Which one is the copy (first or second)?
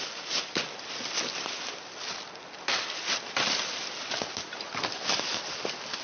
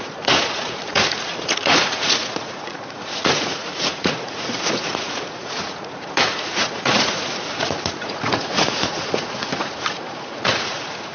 second